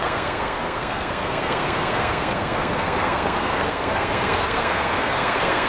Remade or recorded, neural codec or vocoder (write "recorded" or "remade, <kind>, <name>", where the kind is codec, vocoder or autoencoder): remade, codec, SNAC